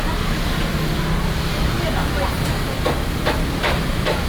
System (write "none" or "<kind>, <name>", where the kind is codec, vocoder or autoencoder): none